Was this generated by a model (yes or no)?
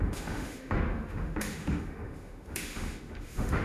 yes